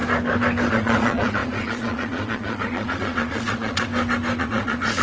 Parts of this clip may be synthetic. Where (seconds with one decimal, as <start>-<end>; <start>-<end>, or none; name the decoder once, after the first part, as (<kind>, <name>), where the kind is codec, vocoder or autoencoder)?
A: 0.7-3.9 (vocoder, Vocos); 4.4-5.0